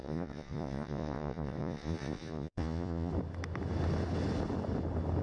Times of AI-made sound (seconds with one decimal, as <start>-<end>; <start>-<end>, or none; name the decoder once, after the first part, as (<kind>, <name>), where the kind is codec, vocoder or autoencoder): 0.0-3.1 (vocoder, Vocos)